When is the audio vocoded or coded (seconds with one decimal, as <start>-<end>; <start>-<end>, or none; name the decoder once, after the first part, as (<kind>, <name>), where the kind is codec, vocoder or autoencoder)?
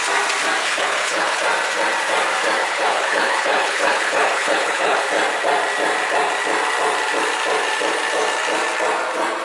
0.6-1.4 (codec, HILCodec); 2.6-5.0